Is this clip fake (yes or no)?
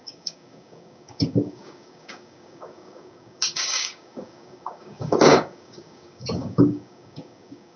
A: yes